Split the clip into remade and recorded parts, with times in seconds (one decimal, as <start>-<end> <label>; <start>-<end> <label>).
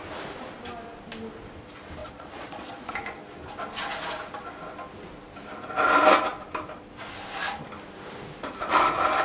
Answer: 0.0-2.0 recorded; 2.0-2.9 remade; 2.9-9.2 recorded